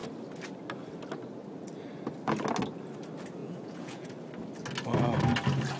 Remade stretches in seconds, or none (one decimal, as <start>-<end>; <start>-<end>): 3.4-4.1